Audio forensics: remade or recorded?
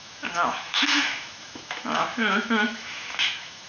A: remade